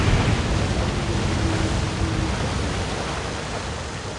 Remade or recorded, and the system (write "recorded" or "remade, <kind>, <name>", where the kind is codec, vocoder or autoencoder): recorded